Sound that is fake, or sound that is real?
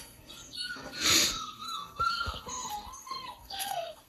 fake